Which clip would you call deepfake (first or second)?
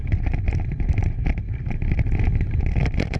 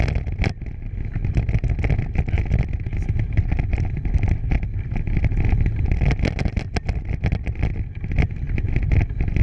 first